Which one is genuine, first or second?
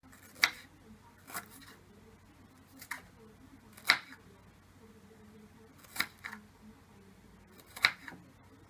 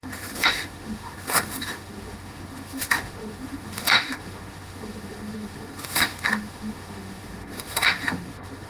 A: first